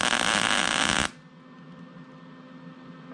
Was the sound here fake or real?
real